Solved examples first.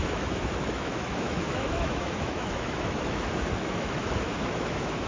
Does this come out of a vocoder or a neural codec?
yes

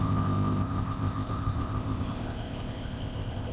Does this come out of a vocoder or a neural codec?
yes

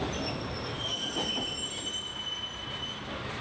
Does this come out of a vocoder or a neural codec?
no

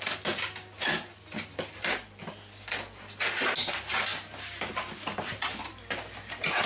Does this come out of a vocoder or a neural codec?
no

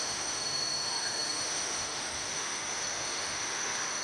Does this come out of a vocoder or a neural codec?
yes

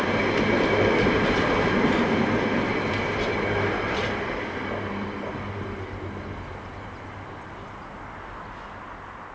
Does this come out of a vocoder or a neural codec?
no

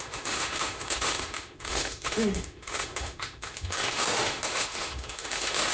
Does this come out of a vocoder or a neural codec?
yes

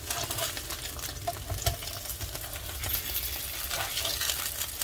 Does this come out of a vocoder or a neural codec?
no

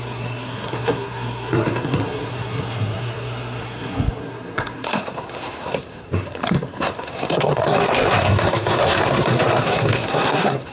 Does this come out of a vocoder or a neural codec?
yes